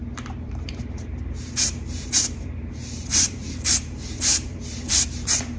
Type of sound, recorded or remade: remade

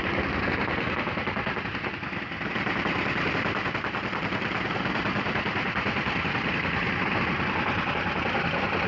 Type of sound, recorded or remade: remade